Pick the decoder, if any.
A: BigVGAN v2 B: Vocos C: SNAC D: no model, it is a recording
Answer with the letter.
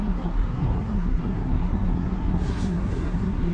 C